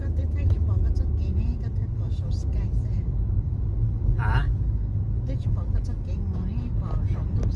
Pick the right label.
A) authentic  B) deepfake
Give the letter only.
A